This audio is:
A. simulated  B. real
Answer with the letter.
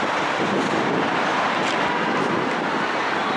B